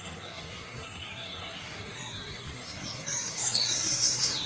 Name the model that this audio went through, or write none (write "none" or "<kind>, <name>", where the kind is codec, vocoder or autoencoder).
codec, SNAC